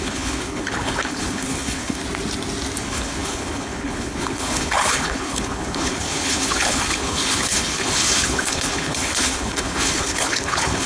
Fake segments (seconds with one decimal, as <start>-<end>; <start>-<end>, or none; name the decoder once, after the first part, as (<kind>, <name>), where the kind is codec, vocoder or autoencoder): 0.0-2.0 (codec, HILCodec); 2.8-10.9